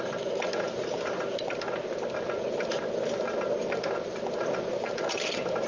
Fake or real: real